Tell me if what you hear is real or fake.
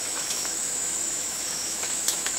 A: fake